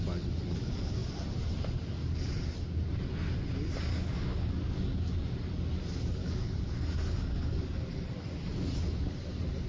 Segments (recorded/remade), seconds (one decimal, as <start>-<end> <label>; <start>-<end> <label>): 0.0-3.9 recorded; 3.9-4.8 remade; 4.8-6.2 recorded; 6.2-7.9 remade; 7.9-9.7 recorded